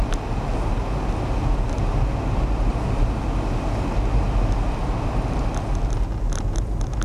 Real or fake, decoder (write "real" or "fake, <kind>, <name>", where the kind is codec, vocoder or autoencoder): real